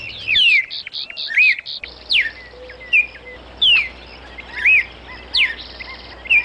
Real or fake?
real